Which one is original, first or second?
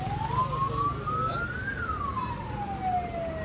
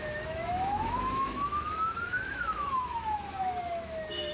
first